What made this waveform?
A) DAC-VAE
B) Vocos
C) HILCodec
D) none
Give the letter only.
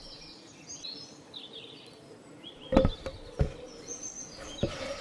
D